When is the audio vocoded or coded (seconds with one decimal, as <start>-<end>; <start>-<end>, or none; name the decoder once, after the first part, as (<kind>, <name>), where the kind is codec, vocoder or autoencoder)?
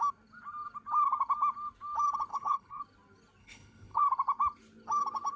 2.3-2.8 (codec, HILCodec); 3.4-4.0